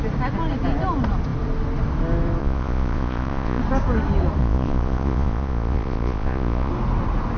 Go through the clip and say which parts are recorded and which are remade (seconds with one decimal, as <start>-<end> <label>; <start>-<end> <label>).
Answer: 0.0-2.4 recorded; 2.4-3.6 remade; 3.6-4.4 recorded; 4.4-6.7 remade; 6.7-7.4 recorded